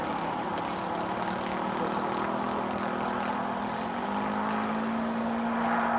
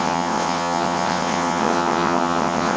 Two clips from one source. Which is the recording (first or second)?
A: first